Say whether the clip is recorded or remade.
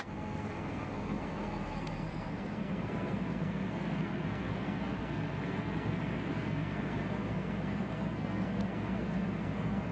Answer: remade